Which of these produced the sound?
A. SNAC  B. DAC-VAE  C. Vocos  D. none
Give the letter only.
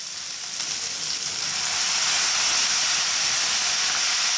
D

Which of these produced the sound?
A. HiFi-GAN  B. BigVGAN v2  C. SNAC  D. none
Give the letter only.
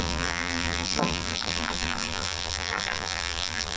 B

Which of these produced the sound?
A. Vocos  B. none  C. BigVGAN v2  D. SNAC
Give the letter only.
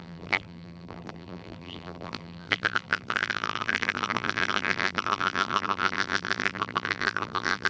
C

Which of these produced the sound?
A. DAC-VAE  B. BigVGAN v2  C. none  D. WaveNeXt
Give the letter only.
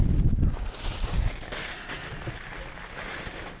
C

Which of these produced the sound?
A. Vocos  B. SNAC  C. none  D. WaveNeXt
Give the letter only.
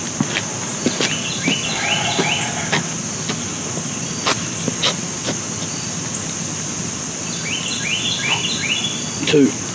C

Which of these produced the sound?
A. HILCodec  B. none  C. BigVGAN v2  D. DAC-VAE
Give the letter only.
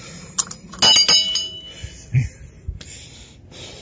B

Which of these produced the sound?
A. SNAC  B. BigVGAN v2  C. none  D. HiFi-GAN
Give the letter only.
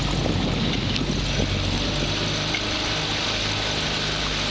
C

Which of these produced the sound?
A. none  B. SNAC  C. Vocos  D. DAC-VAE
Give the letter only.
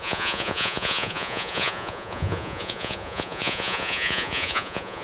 C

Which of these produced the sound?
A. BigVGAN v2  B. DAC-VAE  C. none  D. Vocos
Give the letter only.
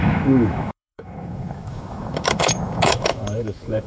B